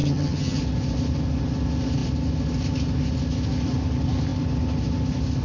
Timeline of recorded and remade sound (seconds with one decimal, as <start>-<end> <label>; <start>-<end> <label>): 0.0-0.6 remade; 0.6-5.4 recorded